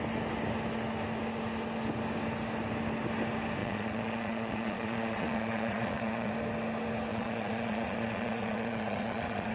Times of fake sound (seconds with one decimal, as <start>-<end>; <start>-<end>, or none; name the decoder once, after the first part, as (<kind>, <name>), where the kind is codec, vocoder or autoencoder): 3.6-6.3 (vocoder, Vocos); 7.1-9.5